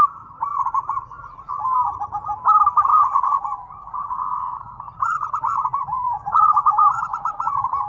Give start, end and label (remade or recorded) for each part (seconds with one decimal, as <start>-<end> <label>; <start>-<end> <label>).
0.0-0.5 recorded; 0.5-1.5 remade; 1.5-2.9 recorded; 2.9-7.5 remade; 7.5-7.9 recorded